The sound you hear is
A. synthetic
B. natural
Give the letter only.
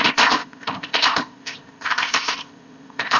A